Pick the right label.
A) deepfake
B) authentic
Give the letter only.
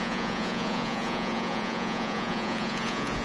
A